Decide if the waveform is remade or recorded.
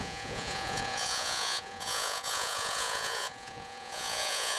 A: remade